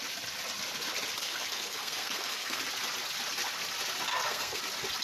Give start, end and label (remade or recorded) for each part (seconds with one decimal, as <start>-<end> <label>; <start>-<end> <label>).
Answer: 0.0-1.2 recorded; 1.2-2.6 remade; 2.6-4.1 recorded; 4.1-4.6 remade; 4.6-5.0 recorded

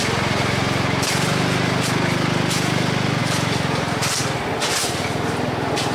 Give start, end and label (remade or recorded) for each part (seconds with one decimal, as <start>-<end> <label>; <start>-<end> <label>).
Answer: 0.0-5.9 recorded